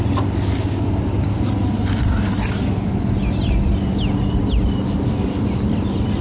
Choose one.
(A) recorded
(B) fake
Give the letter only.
A